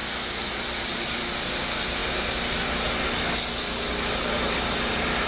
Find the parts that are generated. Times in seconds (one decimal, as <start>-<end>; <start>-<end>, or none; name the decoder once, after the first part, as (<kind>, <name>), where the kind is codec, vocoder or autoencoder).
none